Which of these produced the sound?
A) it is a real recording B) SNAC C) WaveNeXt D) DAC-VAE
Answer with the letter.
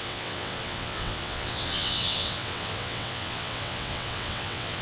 C